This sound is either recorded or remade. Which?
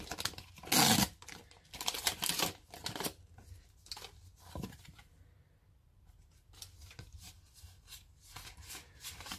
recorded